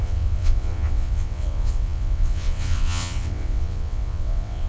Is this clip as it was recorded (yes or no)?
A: no